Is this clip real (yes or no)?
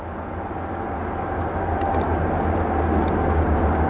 yes